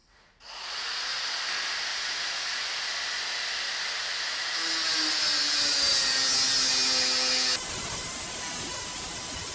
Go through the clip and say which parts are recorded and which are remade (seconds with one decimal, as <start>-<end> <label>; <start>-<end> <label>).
0.0-1.2 remade; 1.2-1.9 recorded; 1.9-2.6 remade; 2.6-9.5 recorded